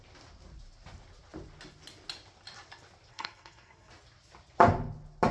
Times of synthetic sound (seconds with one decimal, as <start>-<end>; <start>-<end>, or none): 3.1-3.9